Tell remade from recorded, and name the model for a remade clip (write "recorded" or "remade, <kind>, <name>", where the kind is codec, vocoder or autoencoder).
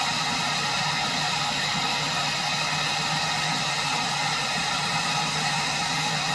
recorded